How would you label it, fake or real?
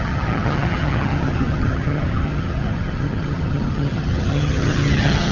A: fake